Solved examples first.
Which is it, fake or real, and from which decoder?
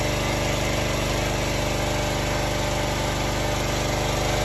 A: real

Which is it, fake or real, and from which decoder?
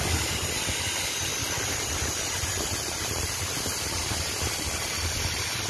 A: fake, vocoder, BigVGAN v2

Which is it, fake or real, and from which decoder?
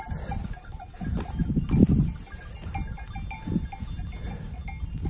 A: real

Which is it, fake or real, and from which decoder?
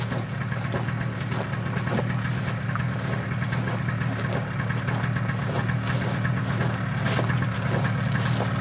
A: real